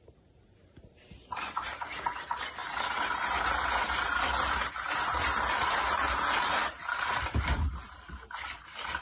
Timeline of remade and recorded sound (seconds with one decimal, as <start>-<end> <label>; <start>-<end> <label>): 0.0-9.0 remade